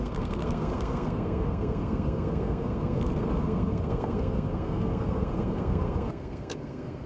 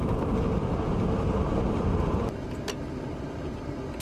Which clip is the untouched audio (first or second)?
second